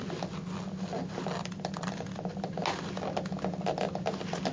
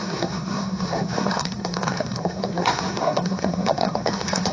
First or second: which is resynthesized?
second